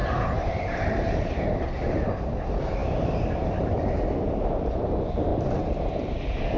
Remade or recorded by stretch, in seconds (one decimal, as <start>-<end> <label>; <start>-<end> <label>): 0.0-6.6 recorded